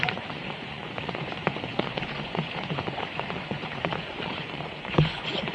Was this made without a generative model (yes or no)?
no